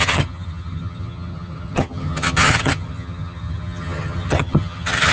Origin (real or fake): fake